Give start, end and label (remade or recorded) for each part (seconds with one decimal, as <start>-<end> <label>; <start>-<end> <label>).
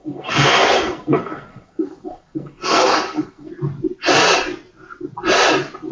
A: 0.0-3.5 remade; 3.5-5.9 recorded